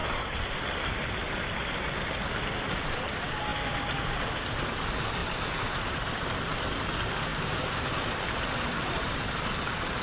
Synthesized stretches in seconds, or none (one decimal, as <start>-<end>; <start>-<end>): 5.2-6.1; 7.3-9.5